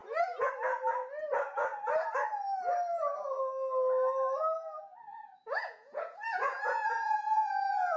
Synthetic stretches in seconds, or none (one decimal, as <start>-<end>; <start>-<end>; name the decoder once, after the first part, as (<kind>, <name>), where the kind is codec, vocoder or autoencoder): 0.0-0.5 (vocoder, Vocos); 5.1-7.5